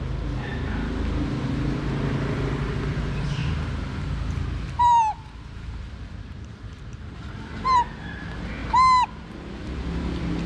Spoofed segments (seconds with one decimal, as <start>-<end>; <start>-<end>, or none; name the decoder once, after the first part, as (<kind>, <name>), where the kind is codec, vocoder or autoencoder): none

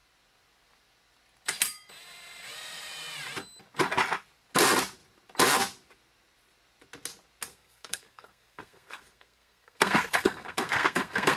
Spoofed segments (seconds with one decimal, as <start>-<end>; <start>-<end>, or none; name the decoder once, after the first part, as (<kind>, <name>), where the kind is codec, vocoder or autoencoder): 7.5-11.4 (codec, SNAC)

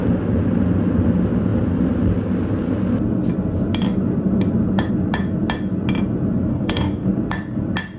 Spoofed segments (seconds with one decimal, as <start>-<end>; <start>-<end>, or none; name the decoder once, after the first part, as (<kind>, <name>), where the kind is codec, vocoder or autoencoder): 6.5-7.1 (codec, DAC)

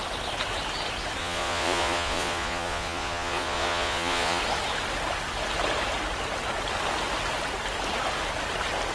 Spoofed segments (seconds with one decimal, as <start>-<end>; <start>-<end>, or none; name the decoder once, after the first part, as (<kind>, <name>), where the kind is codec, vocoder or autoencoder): 1.2-4.4 (vocoder, Vocos)

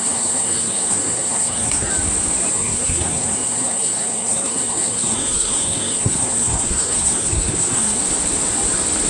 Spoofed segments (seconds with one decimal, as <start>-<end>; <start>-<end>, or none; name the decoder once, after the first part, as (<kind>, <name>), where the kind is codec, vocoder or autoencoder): 0.0-1.9 (codec, SNAC); 2.5-8.0

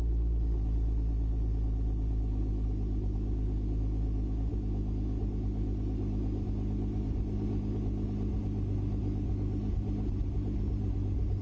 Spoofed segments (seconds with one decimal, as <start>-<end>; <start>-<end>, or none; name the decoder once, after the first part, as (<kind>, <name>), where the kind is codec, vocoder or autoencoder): none